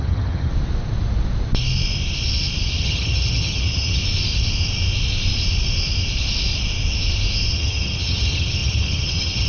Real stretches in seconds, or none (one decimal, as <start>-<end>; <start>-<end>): 0.5-2.8; 4.0-7.5